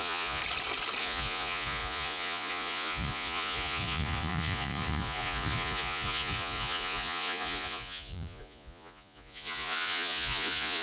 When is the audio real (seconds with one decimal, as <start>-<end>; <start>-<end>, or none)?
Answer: 0.4-1.0